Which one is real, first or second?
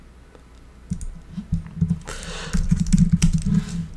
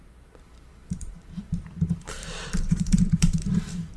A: first